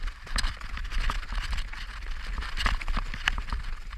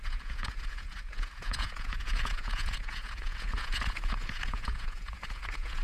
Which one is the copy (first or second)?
second